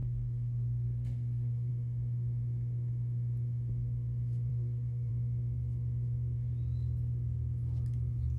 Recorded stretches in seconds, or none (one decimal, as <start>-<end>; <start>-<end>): 1.7-4.5; 5.1-8.4